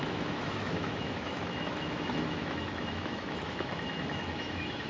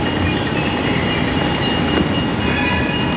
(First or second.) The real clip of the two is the second